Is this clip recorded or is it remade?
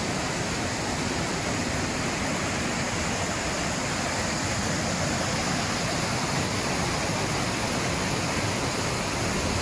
recorded